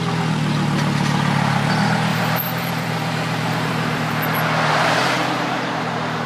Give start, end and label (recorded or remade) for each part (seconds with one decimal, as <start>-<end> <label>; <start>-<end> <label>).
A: 0.0-2.1 recorded; 2.1-6.3 remade

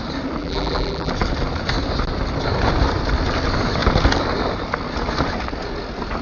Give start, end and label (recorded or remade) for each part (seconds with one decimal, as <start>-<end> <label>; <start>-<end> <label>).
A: 0.0-0.4 recorded; 0.4-1.1 remade; 1.1-6.2 recorded

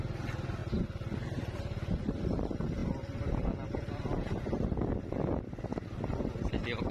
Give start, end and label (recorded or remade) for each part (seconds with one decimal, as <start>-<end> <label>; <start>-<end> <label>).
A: 0.0-6.9 recorded

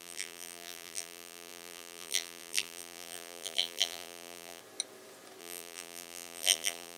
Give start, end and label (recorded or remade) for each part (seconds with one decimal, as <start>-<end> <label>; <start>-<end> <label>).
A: 0.0-4.6 remade; 4.6-5.4 recorded; 5.4-7.0 remade

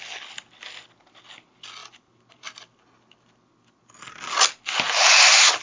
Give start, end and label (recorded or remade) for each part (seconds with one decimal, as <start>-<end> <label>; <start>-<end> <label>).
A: 0.0-5.6 recorded

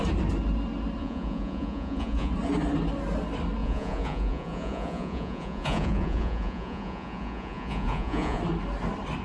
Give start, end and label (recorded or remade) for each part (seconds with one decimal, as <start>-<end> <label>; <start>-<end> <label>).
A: 0.0-1.0 recorded; 1.0-2.3 remade; 2.3-3.6 recorded; 3.6-8.4 remade; 8.4-9.2 recorded

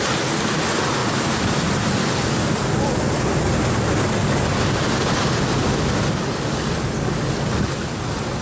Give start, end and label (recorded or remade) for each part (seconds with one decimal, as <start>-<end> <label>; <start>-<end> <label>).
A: 0.0-1.0 recorded; 1.0-6.0 remade; 6.0-8.4 recorded

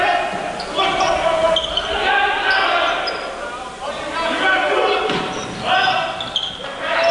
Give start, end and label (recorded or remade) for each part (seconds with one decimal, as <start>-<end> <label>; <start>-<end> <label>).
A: 0.0-7.1 recorded